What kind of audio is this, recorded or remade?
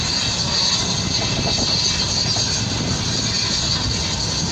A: recorded